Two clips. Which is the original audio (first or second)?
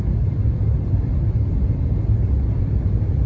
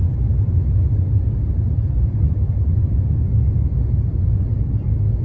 second